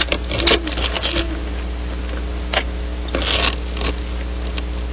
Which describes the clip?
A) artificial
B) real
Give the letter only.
B